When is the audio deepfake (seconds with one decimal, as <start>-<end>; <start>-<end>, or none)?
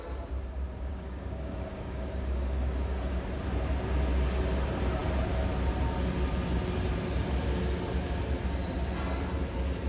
0.9-3.2